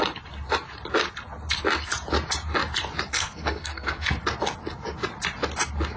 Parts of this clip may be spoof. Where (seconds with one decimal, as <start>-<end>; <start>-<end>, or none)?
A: 3.1-4.1